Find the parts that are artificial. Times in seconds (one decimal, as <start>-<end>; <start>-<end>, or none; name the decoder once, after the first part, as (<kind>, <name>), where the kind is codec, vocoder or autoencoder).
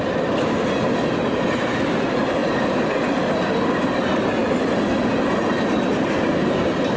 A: none